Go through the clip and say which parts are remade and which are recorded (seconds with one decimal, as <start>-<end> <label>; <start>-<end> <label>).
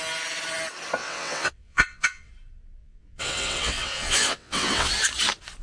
0.0-1.0 recorded; 1.0-2.3 remade; 2.3-2.8 recorded; 2.8-4.9 remade; 4.9-5.6 recorded